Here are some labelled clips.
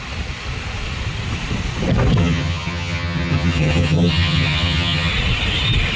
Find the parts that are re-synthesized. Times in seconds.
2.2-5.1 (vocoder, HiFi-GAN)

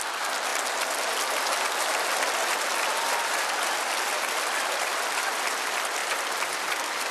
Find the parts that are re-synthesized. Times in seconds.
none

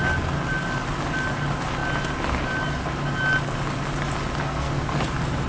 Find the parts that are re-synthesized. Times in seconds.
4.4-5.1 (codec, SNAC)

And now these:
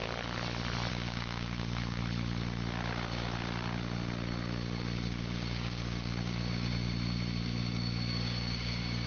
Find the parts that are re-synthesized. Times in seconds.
0.9-2.0 (codec, DAC); 5.1-6.7; 7.4-9.1

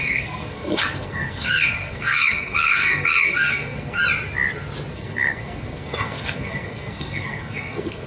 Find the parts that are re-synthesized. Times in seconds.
0.0-4.0 (codec, SNAC); 4.9-8.1